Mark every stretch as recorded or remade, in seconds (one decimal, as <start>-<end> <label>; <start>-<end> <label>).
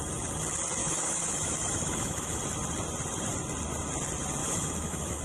0.0-0.8 recorded; 0.8-2.4 remade; 2.4-4.4 recorded; 4.4-5.2 remade